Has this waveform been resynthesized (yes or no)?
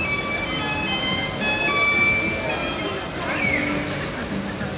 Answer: no